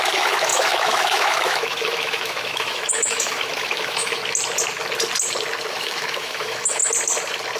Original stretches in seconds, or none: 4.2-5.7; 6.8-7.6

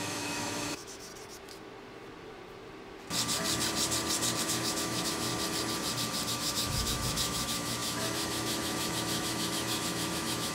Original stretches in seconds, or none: 1.1-4.4; 5.3-6.3